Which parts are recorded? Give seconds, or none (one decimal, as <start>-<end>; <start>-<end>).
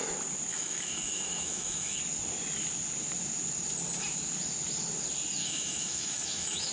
0.0-0.5; 2.0-5.4